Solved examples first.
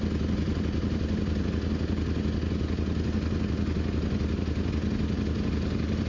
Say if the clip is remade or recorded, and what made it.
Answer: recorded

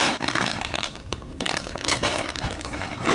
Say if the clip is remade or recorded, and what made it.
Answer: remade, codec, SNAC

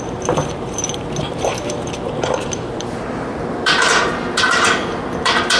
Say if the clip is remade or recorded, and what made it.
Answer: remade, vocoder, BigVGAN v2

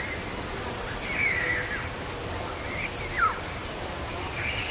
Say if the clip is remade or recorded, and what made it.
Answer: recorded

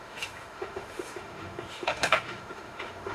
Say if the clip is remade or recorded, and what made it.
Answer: remade, autoencoder, DAC-VAE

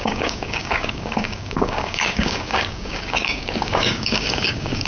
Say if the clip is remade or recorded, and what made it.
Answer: remade, codec, DAC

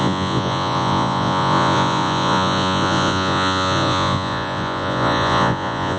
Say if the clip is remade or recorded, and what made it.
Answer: remade, vocoder, Vocos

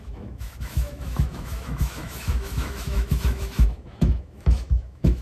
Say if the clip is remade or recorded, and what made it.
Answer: remade, autoencoder, DAC-VAE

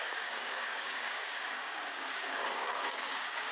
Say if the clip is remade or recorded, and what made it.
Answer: remade, codec, DAC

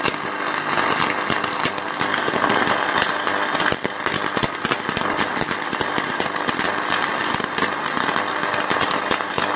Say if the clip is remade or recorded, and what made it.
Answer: recorded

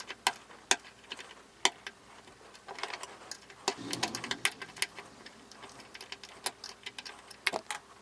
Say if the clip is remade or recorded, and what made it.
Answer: recorded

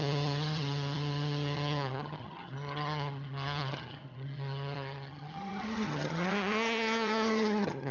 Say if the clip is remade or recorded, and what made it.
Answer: remade, vocoder, HiFi-GAN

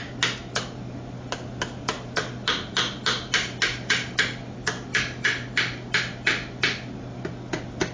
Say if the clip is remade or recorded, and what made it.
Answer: recorded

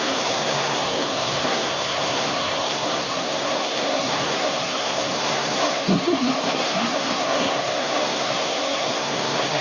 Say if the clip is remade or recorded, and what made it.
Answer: remade, codec, SNAC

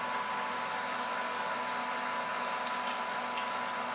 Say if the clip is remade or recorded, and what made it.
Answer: recorded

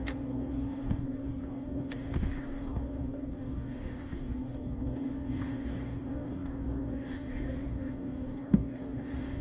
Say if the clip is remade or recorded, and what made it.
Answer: remade, codec, DAC